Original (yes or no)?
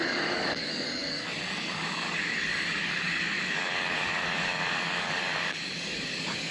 no